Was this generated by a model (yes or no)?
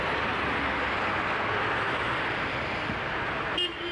no